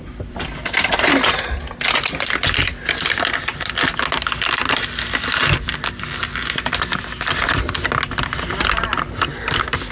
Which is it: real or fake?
real